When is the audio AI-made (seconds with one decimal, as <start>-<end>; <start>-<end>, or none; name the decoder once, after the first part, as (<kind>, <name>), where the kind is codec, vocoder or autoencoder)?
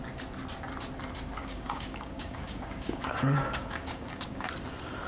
1.4-4.5 (codec, DAC)